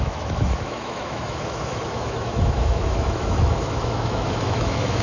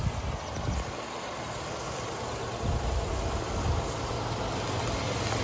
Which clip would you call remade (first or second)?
first